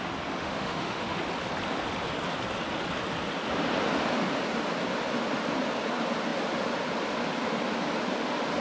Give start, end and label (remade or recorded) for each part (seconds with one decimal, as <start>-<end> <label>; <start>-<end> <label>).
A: 0.0-0.4 recorded; 0.4-1.2 remade; 1.2-8.6 recorded